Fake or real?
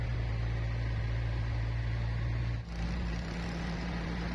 real